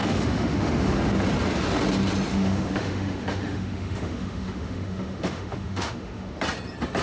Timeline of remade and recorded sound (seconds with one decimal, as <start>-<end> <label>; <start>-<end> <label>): 0.0-1.0 remade; 1.0-2.3 recorded; 2.3-6.4 remade; 6.4-7.0 recorded